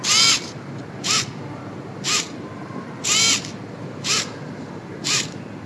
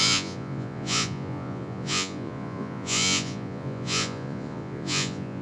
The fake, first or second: second